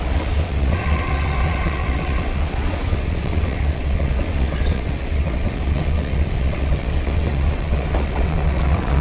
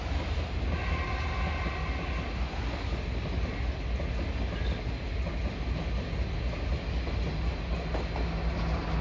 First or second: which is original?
second